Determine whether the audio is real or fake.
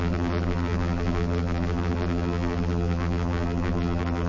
fake